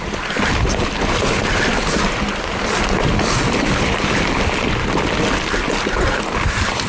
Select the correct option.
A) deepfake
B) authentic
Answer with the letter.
B